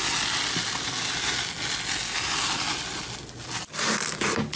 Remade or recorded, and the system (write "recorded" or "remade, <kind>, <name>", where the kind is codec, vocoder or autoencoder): recorded